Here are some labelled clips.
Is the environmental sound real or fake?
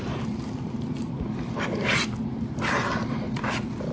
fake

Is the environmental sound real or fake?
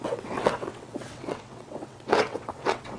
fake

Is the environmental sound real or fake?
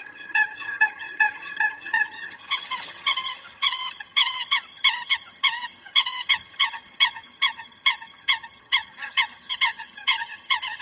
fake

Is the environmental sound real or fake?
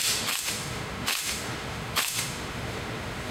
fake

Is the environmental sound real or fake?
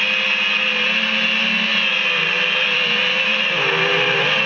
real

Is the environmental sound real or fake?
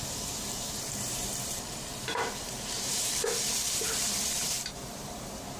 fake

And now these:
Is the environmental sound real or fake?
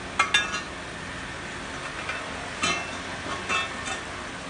real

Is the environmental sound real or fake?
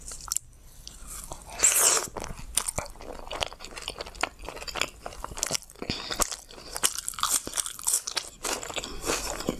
real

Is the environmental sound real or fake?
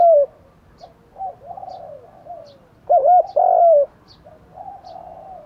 real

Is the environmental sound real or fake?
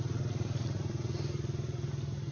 real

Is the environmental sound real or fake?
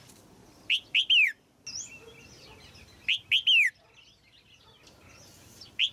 real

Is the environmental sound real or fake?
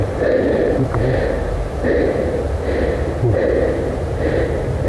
real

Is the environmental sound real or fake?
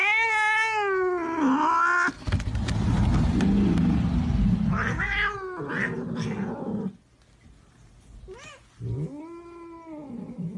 real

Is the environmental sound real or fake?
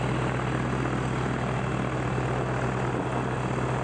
real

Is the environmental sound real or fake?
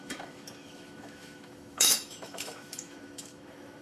fake